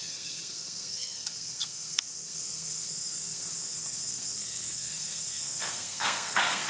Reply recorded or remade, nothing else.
remade